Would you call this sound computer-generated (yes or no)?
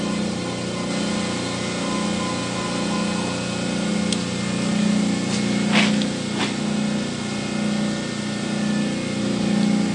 no